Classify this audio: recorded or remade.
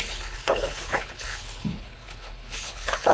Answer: remade